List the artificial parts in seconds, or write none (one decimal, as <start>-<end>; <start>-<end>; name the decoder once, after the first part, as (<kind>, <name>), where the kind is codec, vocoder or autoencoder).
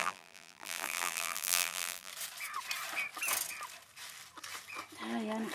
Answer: 0.0-2.1 (vocoder, BigVGAN v2)